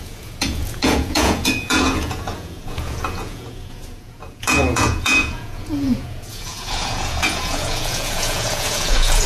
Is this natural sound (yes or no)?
no